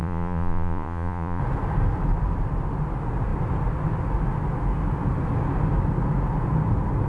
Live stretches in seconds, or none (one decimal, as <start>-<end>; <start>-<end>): 1.4-7.1

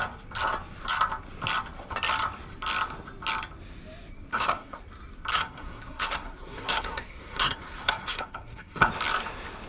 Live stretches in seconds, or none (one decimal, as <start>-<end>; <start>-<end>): 0.0-4.3; 4.8-5.3; 8.9-9.7

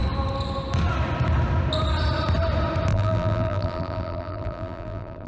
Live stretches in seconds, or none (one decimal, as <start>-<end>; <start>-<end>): 0.0-2.9

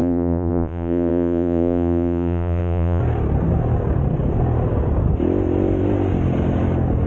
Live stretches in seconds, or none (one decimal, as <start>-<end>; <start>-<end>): 3.0-7.1

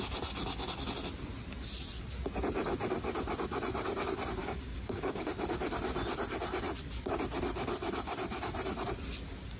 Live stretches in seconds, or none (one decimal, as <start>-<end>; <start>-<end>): 0.0-4.4; 5.3-9.6

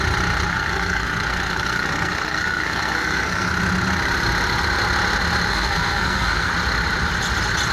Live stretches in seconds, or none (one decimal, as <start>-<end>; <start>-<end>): 0.0-0.5; 3.5-5.5; 6.5-7.7